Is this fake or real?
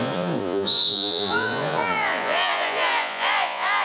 fake